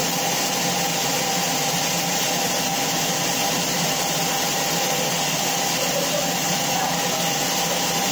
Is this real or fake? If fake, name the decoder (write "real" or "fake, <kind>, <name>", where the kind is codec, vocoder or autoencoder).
real